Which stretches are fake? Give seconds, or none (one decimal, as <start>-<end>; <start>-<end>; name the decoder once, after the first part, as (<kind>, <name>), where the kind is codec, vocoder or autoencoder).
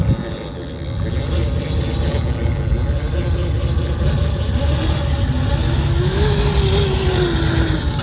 5.6-6.4 (autoencoder, DAC-VAE)